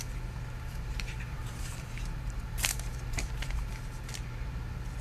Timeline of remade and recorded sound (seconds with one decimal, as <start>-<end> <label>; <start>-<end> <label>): 0.0-0.7 recorded; 0.7-3.7 remade; 3.7-5.0 recorded